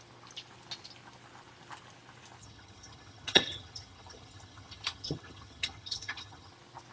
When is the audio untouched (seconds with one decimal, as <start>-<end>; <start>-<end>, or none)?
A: 0.0-2.4; 6.5-6.9